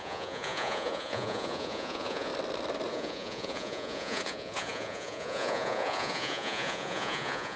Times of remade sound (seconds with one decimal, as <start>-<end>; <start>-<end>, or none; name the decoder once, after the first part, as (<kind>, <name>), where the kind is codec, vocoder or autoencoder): 0.0-2.3 (vocoder, Vocos); 2.9-7.6